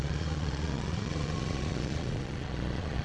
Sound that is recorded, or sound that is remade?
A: remade